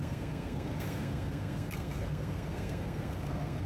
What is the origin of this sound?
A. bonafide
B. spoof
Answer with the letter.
B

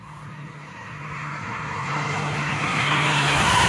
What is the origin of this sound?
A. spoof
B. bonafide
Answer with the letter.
A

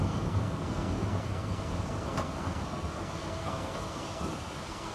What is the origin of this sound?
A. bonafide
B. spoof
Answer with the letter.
B